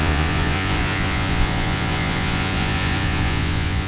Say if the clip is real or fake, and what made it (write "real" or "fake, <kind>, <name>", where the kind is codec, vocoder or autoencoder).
fake, vocoder, Vocos